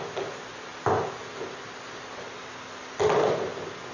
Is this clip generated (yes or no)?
no